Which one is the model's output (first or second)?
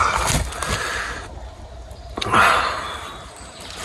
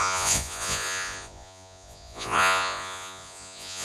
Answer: second